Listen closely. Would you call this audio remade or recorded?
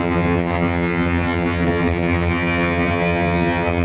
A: remade